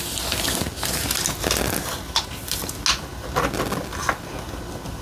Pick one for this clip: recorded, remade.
recorded